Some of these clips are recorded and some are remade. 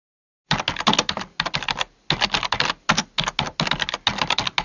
recorded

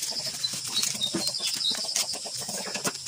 recorded